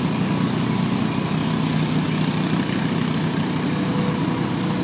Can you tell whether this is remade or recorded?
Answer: recorded